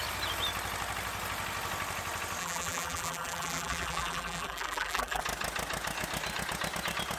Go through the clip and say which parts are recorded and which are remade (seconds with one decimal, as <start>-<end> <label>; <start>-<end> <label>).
0.0-2.4 recorded; 2.4-5.2 remade; 5.2-7.2 recorded